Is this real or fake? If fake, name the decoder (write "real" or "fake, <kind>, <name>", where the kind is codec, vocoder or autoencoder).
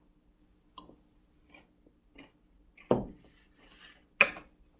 real